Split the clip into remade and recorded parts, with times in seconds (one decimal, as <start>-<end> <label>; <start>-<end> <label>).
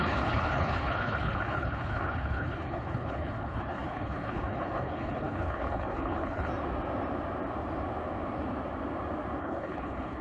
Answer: 0.0-6.5 remade; 6.5-9.4 recorded; 9.4-10.2 remade